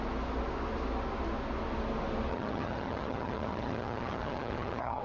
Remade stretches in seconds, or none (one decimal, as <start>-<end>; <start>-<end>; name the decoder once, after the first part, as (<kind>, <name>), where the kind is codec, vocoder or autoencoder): 2.3-5.0 (vocoder, HiFi-GAN)